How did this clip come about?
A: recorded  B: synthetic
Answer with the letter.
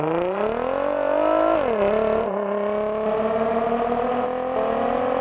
A